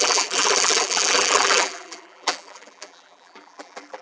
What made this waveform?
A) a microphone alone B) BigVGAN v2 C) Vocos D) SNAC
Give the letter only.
B